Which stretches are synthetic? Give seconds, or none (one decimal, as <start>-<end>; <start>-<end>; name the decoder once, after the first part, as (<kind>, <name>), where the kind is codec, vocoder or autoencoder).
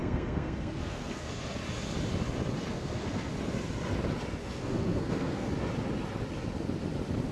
0.0-1.3 (codec, SNAC); 2.7-3.3; 4.4-5.5